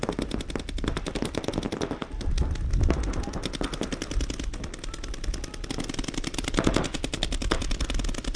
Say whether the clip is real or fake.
real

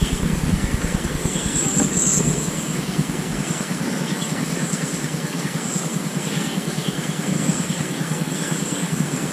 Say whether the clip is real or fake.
fake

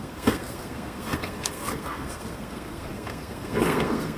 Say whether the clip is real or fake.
fake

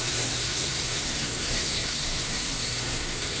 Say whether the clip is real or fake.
fake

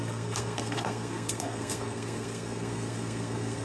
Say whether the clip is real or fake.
fake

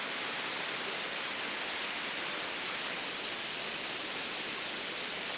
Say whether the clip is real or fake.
real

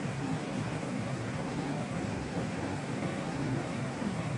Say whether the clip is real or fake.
fake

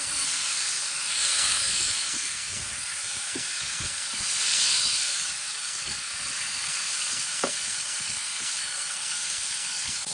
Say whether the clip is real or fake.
fake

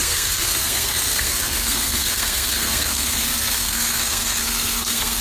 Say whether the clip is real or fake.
fake